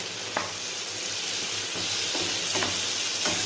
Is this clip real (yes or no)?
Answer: yes